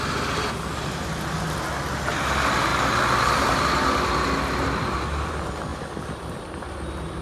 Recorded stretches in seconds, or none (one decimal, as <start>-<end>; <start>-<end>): 0.0-2.7; 3.6-5.7; 6.5-7.2